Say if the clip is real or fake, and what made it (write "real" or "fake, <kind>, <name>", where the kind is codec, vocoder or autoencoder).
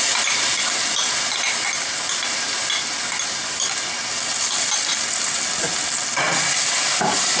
real